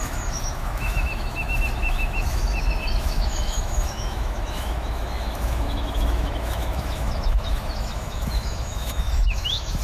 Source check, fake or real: fake